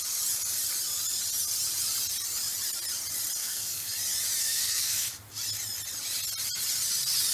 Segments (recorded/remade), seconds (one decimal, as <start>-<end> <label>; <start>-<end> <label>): 0.0-3.4 recorded; 3.4-3.9 remade; 3.9-4.4 recorded; 4.4-5.1 remade; 5.1-7.3 recorded